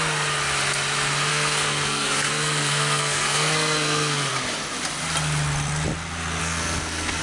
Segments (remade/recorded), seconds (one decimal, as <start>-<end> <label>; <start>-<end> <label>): 0.0-1.3 recorded; 1.3-4.3 remade; 4.3-6.4 recorded; 6.4-7.2 remade